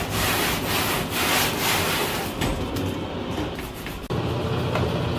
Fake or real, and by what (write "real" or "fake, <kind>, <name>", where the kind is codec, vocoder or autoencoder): real